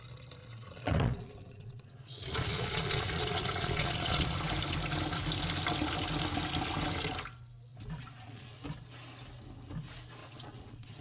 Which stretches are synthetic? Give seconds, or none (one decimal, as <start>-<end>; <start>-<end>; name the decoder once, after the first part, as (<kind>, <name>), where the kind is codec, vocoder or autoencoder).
0.4-4.4 (vocoder, Vocos); 7.7-8.6; 10.2-11.0